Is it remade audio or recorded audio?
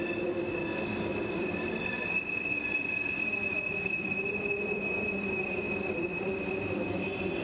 remade